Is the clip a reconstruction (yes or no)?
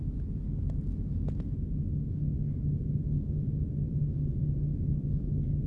no